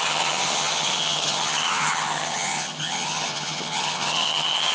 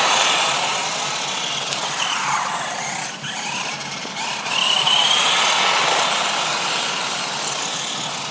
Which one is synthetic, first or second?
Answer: first